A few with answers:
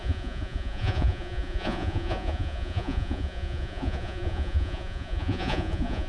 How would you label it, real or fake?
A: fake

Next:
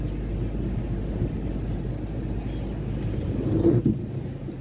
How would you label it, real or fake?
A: real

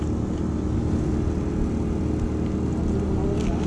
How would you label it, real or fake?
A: real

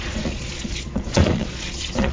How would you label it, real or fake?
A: fake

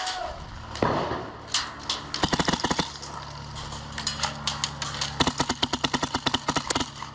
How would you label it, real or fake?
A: real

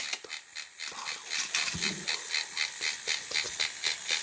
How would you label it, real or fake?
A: real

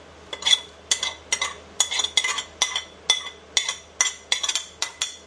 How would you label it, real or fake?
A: real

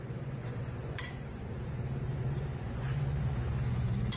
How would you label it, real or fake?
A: fake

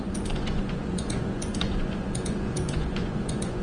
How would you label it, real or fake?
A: fake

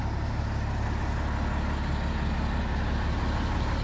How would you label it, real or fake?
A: real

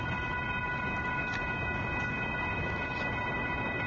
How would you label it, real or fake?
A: real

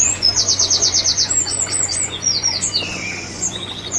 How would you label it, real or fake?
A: fake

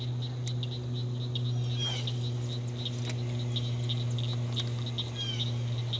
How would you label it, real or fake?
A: real